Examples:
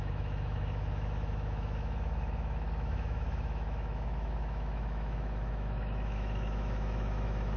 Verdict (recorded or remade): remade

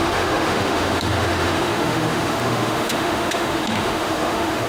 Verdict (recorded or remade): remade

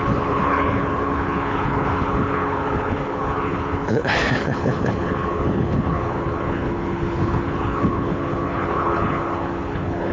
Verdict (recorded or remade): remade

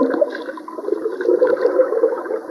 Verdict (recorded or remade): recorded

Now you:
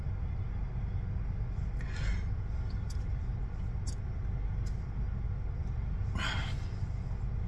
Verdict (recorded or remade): recorded